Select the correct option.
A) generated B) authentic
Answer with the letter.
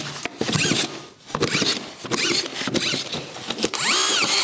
B